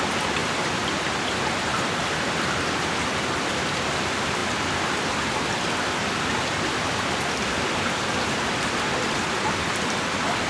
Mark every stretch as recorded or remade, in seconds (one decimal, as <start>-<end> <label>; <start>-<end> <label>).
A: 0.0-10.5 recorded